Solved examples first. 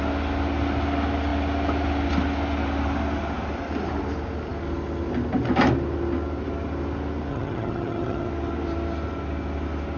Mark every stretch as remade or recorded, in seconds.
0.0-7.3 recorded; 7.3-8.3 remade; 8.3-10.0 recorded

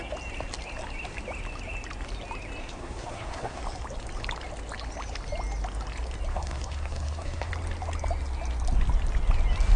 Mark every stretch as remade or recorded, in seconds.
0.0-2.6 recorded; 2.6-3.6 remade; 3.6-6.3 recorded; 6.3-7.5 remade; 7.5-9.8 recorded

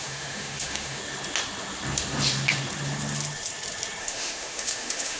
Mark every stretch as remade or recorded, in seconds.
0.0-1.0 remade; 1.0-4.0 recorded; 4.0-5.2 remade

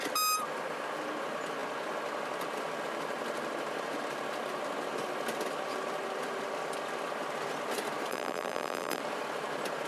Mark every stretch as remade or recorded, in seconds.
0.0-8.1 recorded; 8.1-9.0 remade; 9.0-9.9 recorded

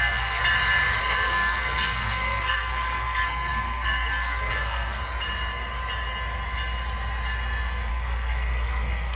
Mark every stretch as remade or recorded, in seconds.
0.0-0.4 remade; 0.4-1.0 recorded; 1.0-5.0 remade; 5.0-7.9 recorded; 7.9-9.2 remade

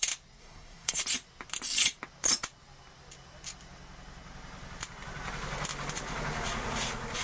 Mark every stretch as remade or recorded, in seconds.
0.0-0.4 recorded; 0.4-1.0 remade; 1.0-7.2 recorded

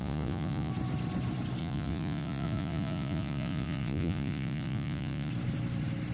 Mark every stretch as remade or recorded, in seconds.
0.0-0.7 remade; 0.7-1.6 recorded; 1.6-5.3 remade; 5.3-6.1 recorded

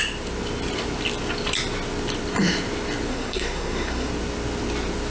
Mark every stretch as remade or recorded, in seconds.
0.0-3.1 recorded; 3.1-4.1 remade; 4.1-5.1 recorded